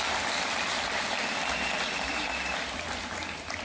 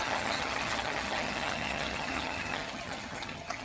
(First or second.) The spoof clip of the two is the second